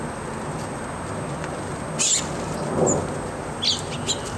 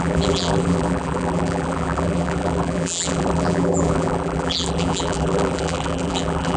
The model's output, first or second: second